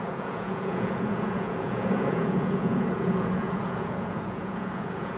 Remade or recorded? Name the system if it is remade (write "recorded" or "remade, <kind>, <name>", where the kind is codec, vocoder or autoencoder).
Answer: remade, vocoder, Vocos